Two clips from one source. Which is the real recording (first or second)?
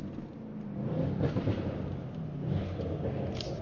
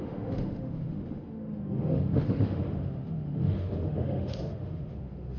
first